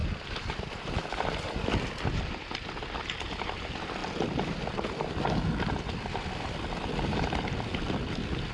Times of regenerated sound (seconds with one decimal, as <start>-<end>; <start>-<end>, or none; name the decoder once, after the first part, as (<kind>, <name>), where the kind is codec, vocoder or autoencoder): none